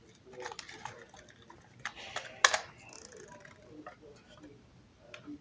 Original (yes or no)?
yes